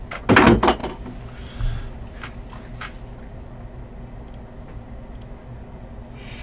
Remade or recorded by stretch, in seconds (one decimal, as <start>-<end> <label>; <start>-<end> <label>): 0.0-6.4 recorded